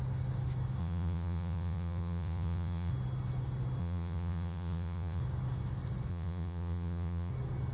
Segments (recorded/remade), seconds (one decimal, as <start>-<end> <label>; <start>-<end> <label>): 0.0-0.8 recorded; 0.8-2.9 remade; 2.9-3.8 recorded; 3.8-5.2 remade; 5.2-6.1 recorded; 6.1-7.3 remade; 7.3-7.7 recorded